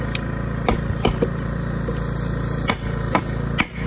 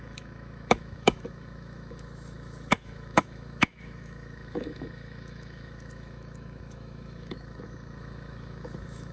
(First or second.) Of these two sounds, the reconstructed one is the second